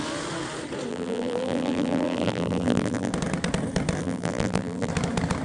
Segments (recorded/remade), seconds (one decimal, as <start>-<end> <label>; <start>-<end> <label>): 0.0-0.9 recorded; 0.9-3.1 remade; 3.1-4.0 recorded; 4.0-4.9 remade; 4.9-5.4 recorded